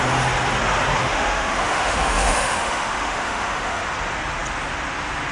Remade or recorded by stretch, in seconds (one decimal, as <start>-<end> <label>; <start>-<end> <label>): 0.0-1.0 recorded; 1.0-3.8 remade; 3.8-5.3 recorded